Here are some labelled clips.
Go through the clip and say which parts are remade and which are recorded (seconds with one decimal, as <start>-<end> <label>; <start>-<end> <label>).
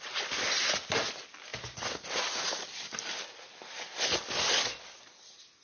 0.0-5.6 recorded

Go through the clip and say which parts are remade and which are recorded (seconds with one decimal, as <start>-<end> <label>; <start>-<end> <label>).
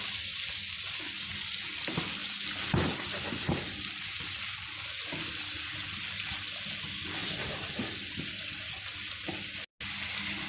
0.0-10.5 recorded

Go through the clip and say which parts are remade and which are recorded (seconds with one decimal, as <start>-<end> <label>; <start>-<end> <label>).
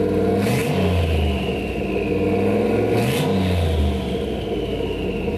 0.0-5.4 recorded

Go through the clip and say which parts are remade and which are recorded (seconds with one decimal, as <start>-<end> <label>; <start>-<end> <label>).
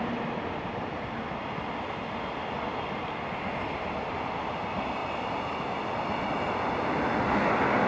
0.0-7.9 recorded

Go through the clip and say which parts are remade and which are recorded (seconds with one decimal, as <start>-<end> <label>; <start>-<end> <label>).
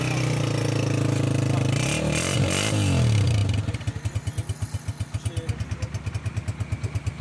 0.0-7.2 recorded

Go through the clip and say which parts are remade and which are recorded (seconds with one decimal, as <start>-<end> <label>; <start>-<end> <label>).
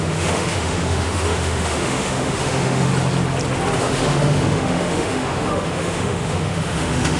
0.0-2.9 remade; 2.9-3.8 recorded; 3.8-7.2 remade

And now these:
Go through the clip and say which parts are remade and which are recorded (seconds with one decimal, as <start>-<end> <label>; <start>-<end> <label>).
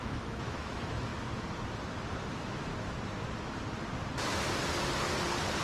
0.0-1.1 remade; 1.1-2.3 recorded; 2.3-2.7 remade; 2.7-5.6 recorded